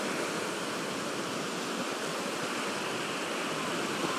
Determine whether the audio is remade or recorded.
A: remade